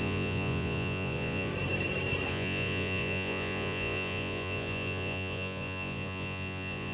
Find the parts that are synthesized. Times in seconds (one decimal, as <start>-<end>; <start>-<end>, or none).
0.0-1.5; 2.3-6.9